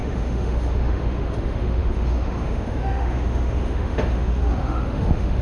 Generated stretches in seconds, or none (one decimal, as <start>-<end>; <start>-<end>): 0.0-5.4